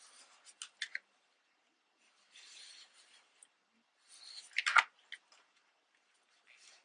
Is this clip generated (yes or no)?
no